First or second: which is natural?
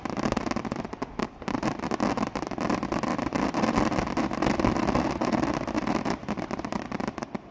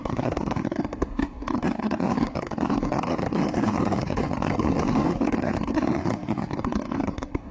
first